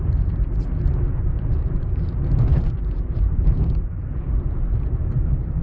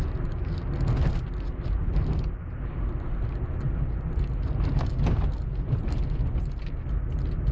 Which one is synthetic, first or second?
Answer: first